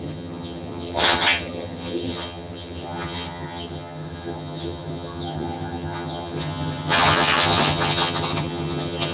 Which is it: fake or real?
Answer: fake